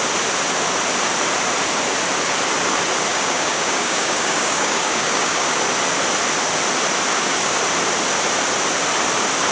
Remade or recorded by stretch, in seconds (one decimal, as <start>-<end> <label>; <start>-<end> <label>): 0.0-3.1 recorded; 3.1-5.6 remade; 5.6-7.1 recorded; 7.1-7.6 remade; 7.6-9.5 recorded